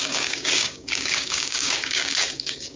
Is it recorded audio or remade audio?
remade